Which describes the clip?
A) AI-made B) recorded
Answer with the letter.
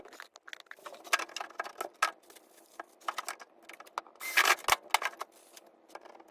B